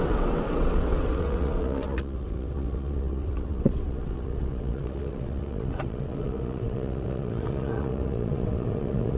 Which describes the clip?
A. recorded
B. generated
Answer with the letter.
B